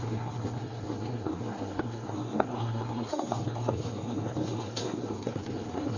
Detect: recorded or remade remade